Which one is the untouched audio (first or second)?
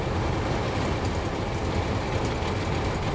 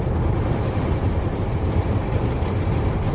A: first